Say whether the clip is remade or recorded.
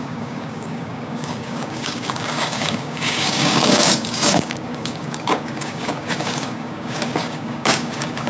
remade